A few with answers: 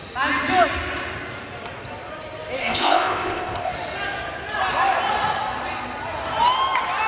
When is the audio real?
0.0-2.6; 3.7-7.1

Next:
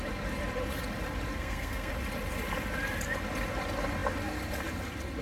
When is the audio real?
0.0-1.3; 1.9-5.2

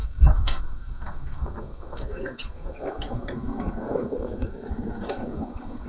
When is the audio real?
none

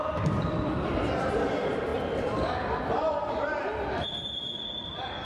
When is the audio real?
1.9-2.8

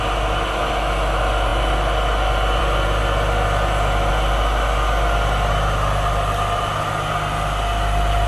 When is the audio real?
0.0-8.3

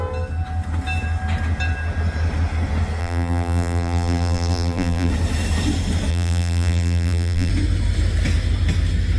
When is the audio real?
0.0-3.0; 5.1-6.1; 7.5-9.2

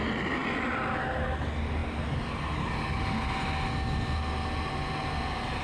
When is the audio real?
0.0-5.6

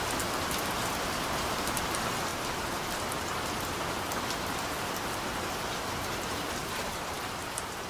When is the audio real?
0.0-7.9